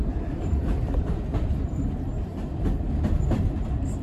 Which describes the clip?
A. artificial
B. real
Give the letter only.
A